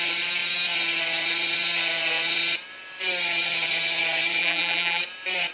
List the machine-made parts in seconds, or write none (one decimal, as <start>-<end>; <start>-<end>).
4.4-5.0

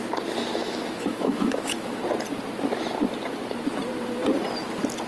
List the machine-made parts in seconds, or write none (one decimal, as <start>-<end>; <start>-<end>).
0.6-2.0

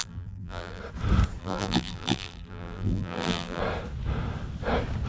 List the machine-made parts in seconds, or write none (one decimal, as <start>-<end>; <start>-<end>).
0.0-0.8; 1.4-3.6

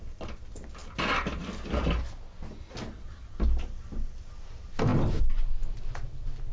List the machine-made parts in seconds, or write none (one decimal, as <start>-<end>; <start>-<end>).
none

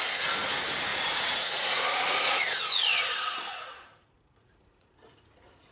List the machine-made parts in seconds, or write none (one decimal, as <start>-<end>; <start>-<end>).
0.0-5.7

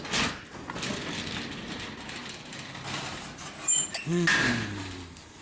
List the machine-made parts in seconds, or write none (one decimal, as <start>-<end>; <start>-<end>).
none

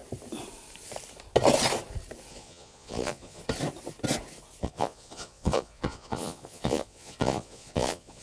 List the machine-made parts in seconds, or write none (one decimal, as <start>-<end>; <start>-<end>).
2.3-3.4; 4.6-8.2